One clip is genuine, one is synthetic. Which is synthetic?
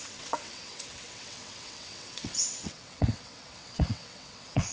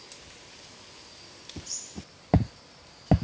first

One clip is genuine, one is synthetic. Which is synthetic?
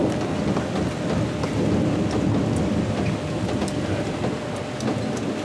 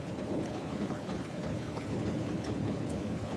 second